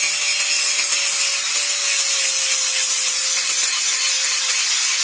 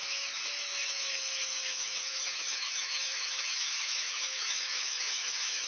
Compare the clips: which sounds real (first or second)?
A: first